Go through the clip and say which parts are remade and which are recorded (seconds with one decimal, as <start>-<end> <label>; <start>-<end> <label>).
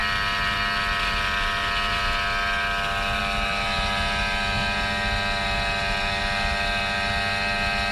0.0-7.9 recorded